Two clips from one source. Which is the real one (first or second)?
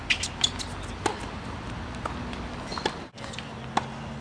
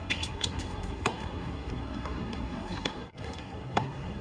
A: first